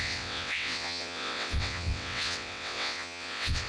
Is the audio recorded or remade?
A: remade